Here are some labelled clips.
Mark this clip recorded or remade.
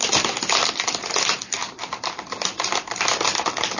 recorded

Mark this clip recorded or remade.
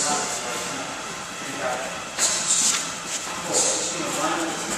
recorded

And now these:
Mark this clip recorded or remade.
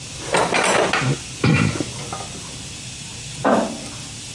recorded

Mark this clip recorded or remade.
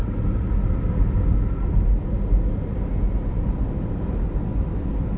recorded